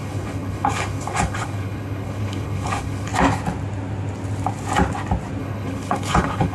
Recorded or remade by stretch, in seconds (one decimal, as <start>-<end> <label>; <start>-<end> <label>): 0.0-3.1 remade; 3.1-5.4 recorded; 5.4-6.5 remade

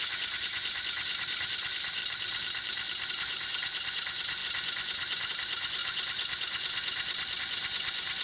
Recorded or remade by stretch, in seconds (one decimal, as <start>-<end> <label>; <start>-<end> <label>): 0.0-2.0 remade; 2.0-3.1 recorded; 3.1-8.2 remade